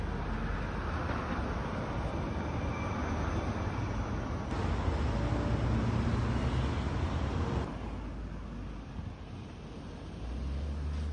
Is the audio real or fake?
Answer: real